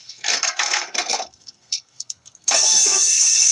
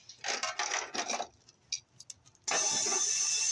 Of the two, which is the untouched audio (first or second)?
second